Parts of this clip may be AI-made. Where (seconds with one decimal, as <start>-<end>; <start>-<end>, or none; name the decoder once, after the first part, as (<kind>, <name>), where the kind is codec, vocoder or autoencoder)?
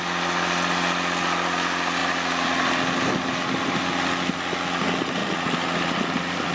none